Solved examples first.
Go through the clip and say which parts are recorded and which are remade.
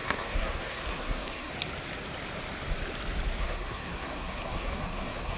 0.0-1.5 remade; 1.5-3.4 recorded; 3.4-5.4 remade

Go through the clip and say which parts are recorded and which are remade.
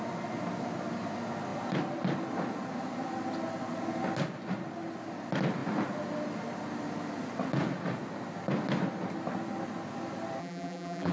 0.0-10.4 recorded; 10.4-11.1 remade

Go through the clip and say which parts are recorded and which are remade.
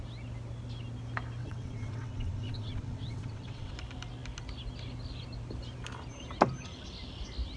0.0-1.4 recorded; 1.4-3.7 remade; 3.7-7.6 recorded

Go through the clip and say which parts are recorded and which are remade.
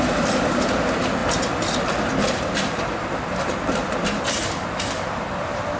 0.0-5.8 recorded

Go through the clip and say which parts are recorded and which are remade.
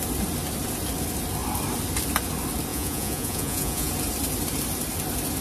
0.0-2.7 recorded; 2.7-3.9 remade; 3.9-5.4 recorded